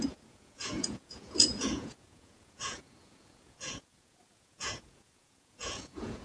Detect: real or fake fake